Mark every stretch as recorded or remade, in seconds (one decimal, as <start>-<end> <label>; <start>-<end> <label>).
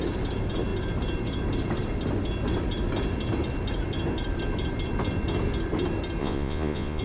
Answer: 0.0-6.2 recorded; 6.2-7.0 remade